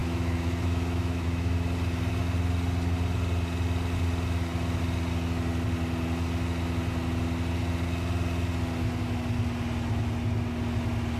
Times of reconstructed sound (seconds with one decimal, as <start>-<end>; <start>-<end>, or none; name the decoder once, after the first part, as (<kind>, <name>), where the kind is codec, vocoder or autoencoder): 0.0-1.5 (autoencoder, DAC-VAE)